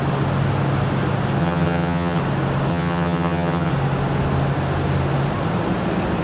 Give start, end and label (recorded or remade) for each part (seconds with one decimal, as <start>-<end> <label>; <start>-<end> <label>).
0.0-1.4 recorded; 1.4-2.2 remade; 2.2-2.7 recorded; 2.7-3.7 remade; 3.7-6.2 recorded